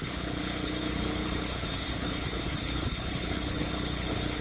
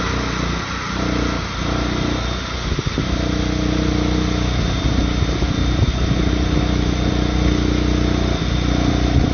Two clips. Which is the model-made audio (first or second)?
first